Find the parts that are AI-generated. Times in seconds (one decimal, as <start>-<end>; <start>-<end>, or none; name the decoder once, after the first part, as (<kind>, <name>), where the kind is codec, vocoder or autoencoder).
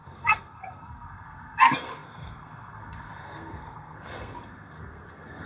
0.0-5.5 (codec, SNAC)